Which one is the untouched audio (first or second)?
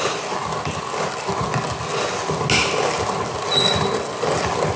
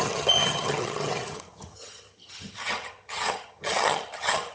first